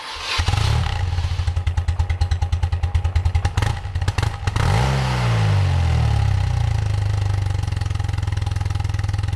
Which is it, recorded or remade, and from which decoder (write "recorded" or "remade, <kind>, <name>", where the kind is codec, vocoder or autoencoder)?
recorded